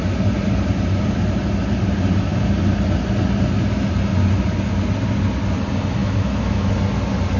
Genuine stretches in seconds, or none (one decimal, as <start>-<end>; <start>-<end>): 0.0-6.0; 6.7-7.4

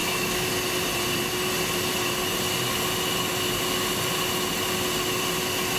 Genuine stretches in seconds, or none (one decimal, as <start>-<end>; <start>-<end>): 0.5-5.8

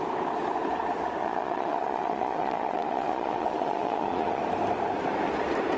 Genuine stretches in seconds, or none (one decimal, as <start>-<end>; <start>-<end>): 0.0-1.2; 4.4-5.8

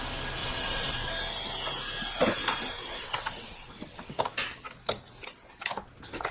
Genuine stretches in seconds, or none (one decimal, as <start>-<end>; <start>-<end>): 0.0-0.4; 1.1-2.6; 4.1-6.3

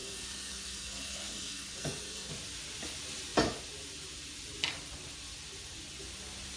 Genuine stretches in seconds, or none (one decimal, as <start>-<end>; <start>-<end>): 2.3-6.6

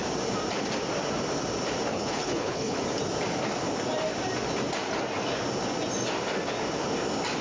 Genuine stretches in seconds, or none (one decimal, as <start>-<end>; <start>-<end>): 0.0-1.9; 2.8-7.4